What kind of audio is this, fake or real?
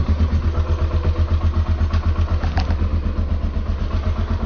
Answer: real